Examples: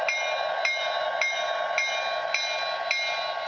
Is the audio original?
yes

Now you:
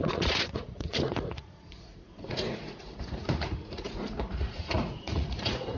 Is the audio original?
no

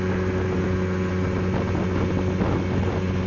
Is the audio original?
yes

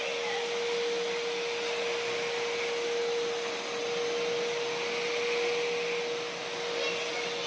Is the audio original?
yes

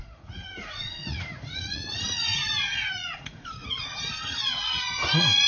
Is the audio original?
no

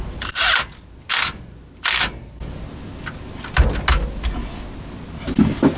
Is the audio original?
yes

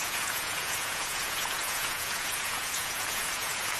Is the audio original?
no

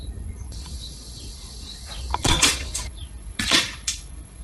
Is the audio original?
no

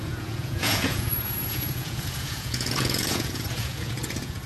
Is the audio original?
no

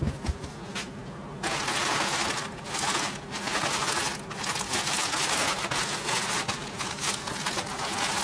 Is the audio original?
yes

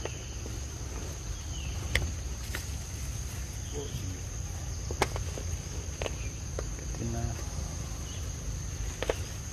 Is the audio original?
yes